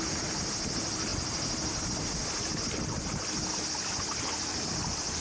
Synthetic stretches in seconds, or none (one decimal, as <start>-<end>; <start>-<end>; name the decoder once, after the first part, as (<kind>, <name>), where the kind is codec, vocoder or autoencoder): none